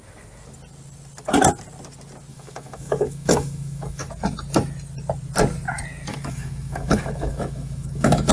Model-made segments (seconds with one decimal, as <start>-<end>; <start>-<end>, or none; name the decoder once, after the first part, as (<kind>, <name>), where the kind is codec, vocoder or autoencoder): 2.3-4.1 (autoencoder, DAC-VAE); 6.1-8.3